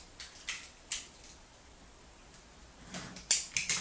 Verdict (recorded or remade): recorded